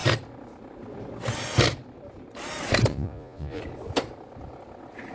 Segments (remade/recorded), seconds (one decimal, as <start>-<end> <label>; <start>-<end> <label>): 0.0-2.9 recorded; 2.9-3.6 remade; 3.6-5.1 recorded